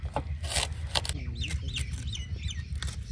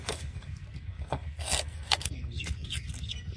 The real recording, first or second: first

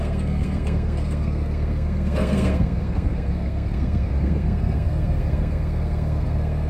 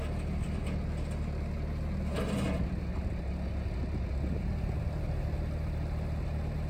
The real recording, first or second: second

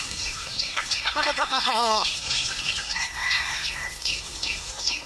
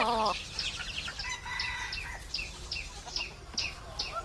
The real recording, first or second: second